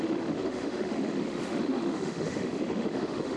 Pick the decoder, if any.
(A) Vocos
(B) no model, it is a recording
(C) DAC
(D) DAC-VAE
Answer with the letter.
D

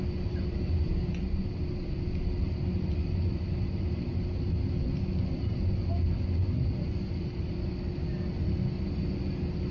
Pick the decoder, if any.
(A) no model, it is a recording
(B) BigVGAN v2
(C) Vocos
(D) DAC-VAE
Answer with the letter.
A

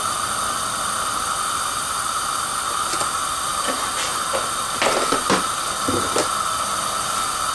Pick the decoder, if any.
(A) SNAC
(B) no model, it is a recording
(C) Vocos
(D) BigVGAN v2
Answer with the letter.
B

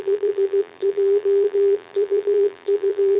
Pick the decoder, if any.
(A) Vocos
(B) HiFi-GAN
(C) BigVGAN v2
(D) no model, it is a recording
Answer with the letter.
C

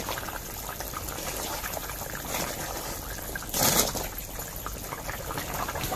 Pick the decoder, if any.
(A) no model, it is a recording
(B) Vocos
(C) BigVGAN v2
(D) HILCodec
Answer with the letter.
A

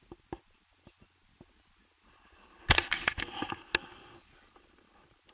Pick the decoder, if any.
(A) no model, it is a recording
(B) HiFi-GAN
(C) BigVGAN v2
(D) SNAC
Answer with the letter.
A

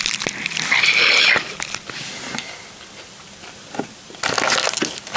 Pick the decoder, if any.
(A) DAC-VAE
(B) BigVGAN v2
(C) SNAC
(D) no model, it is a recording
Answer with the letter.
D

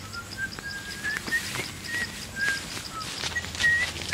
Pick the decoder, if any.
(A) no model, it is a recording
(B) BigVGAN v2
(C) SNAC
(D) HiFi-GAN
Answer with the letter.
A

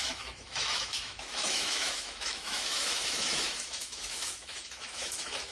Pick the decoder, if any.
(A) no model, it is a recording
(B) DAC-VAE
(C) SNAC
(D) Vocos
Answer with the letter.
B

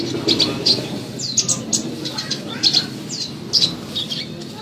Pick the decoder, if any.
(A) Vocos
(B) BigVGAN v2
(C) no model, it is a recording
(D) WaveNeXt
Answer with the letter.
C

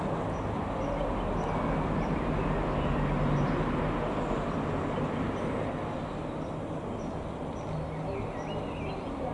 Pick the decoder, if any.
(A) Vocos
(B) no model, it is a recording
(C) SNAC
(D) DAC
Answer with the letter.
B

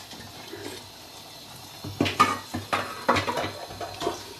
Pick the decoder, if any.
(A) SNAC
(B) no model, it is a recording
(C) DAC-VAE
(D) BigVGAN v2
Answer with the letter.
B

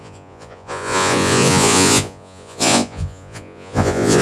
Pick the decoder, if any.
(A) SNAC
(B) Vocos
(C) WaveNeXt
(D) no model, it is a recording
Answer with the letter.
B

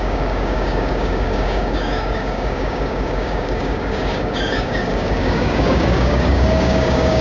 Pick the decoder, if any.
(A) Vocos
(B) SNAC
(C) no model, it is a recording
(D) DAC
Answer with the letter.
D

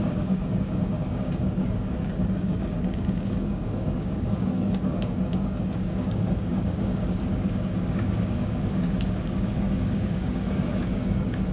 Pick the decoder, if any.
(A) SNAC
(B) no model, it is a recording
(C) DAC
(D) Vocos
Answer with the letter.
C